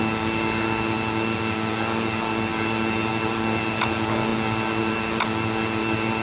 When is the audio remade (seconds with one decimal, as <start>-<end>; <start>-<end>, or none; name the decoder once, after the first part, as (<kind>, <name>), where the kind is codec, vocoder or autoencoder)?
none